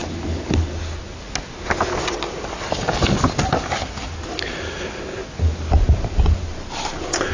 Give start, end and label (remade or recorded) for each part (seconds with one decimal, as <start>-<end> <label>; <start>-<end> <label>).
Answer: 0.0-7.3 recorded